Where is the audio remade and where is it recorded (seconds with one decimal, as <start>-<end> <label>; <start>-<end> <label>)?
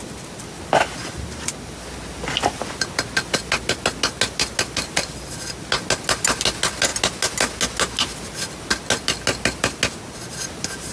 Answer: 0.0-10.9 recorded